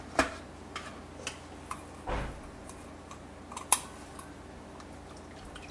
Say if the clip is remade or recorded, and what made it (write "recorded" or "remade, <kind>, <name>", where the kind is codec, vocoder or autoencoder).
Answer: recorded